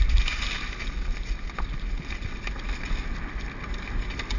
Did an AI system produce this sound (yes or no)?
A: no